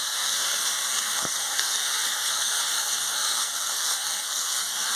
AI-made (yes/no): yes